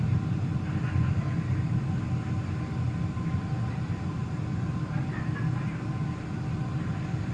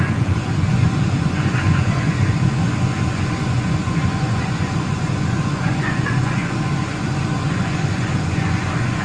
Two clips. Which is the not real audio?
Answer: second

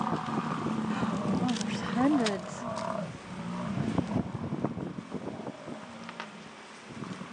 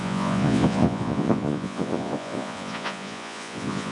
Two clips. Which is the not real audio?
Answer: second